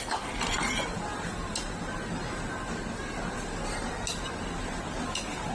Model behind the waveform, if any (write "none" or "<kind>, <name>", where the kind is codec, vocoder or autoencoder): none